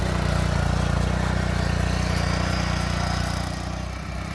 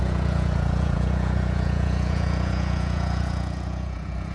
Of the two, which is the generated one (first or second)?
second